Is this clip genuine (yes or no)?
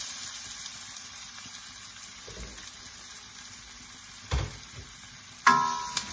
yes